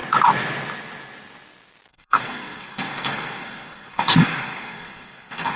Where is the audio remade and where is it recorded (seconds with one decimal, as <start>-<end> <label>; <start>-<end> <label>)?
0.0-1.9 recorded; 1.9-5.6 remade